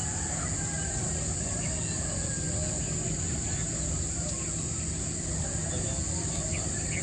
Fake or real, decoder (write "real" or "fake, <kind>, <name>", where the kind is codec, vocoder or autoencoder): real